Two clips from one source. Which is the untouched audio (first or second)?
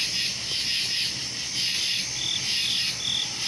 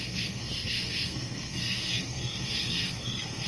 first